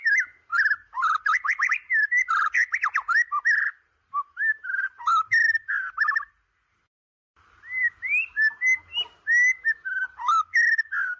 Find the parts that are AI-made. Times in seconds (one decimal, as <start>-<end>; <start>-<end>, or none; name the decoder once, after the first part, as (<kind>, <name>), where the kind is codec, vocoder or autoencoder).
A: none